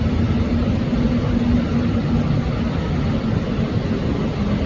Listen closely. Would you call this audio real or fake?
real